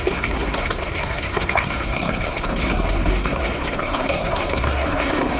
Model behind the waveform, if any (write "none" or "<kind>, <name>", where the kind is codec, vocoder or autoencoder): codec, SNAC